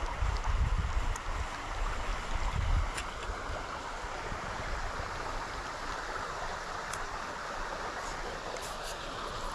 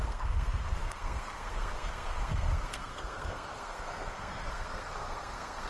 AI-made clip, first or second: second